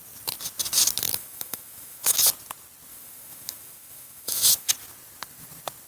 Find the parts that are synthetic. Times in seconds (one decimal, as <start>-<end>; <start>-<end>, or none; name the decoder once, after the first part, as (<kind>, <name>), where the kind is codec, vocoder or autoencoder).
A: 1.1-2.2 (autoencoder, DAC-VAE); 2.9-4.7

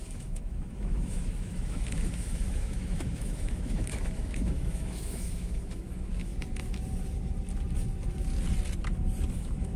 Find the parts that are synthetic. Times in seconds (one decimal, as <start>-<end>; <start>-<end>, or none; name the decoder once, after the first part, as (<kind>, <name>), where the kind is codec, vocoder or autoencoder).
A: 0.0-6.3 (autoencoder, DAC-VAE); 9.3-9.8

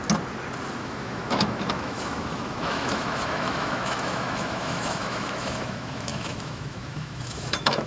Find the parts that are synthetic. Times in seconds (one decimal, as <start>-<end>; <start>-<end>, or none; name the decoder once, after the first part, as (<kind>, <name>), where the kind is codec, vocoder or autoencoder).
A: 0.7-7.9 (autoencoder, DAC-VAE)

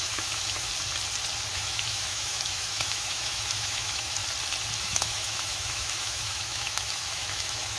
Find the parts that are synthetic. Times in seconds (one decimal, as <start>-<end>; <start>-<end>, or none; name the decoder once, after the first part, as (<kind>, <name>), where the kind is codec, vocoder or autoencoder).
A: 0.0-0.7 (autoencoder, DAC-VAE); 1.5-4.2; 4.8-7.8

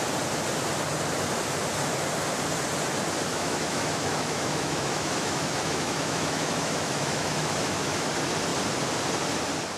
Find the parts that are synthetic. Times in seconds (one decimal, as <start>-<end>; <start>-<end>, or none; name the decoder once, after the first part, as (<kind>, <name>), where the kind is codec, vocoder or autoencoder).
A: 3.3-8.1 (autoencoder, DAC-VAE)

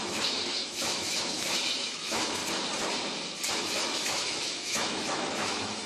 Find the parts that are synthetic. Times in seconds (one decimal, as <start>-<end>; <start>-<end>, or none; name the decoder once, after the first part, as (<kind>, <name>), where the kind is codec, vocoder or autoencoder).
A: 0.0-2.4 (autoencoder, DAC-VAE); 3.5-5.9

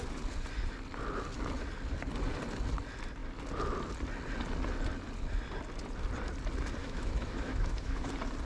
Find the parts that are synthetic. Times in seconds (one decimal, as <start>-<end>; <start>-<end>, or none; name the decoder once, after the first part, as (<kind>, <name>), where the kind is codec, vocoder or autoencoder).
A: 6.8-8.1 (autoencoder, DAC-VAE)